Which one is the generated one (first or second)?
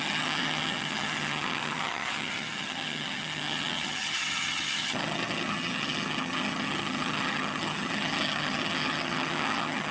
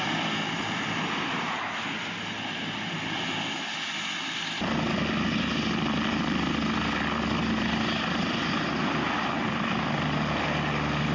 first